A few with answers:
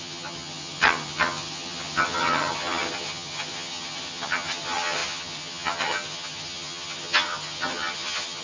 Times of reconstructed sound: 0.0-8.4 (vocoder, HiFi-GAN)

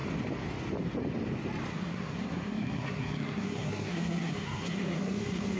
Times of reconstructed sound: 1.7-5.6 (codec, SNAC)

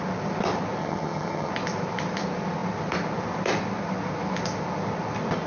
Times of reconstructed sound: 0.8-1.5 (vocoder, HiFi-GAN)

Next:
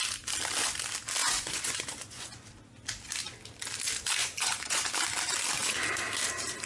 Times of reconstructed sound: 1.2-2.5 (vocoder, Vocos); 4.2-4.8

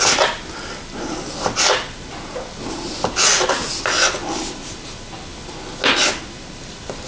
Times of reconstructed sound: none